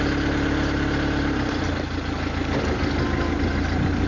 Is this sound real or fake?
real